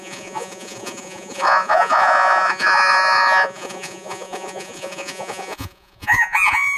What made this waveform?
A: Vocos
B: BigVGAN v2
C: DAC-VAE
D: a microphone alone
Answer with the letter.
A